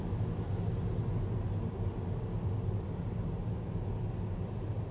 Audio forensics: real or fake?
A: real